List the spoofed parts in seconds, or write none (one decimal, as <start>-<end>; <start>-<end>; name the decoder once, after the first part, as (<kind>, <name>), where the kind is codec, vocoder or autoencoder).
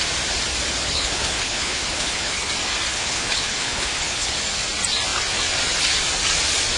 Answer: 0.9-2.5 (codec, HILCodec); 2.9-4.3